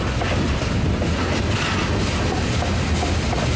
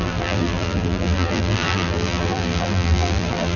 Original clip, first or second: first